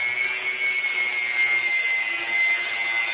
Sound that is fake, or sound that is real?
real